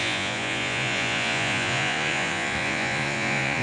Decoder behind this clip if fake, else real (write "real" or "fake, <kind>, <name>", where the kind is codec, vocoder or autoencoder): fake, vocoder, Vocos